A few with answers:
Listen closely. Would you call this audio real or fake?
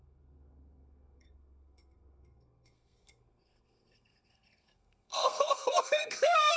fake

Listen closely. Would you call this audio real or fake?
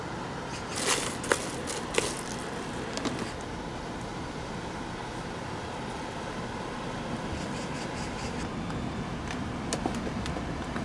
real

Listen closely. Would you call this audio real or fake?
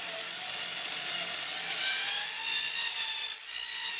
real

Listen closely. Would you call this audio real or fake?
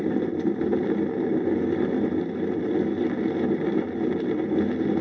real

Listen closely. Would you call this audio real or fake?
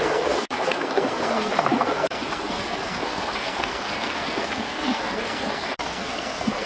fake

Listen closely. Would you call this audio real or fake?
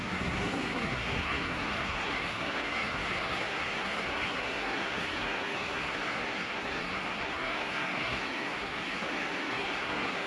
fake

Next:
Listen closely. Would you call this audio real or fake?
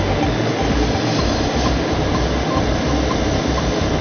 real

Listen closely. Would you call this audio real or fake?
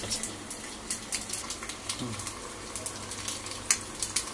real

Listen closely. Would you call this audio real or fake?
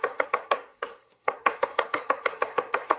fake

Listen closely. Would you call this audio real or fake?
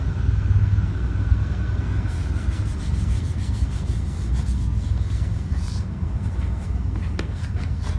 fake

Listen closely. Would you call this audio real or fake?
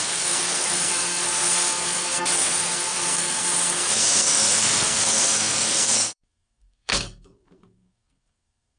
fake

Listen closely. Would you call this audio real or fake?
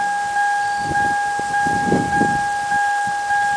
real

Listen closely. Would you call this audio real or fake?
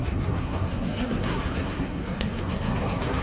fake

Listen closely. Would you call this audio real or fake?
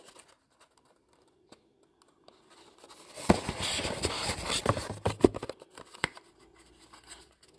real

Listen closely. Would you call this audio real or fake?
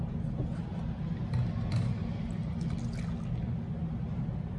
real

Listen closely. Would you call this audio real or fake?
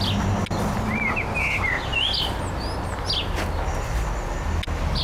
real